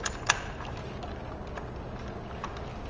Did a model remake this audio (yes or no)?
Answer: no